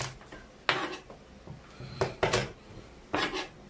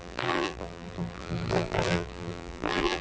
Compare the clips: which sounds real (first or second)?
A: first